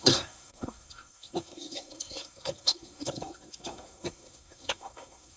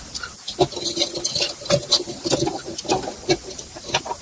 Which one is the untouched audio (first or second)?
second